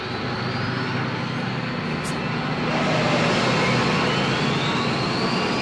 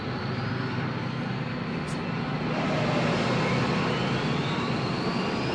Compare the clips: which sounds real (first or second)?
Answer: first